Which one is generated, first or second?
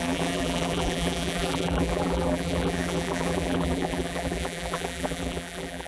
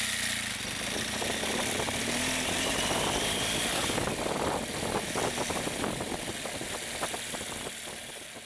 first